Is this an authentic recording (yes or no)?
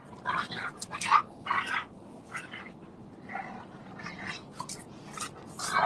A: yes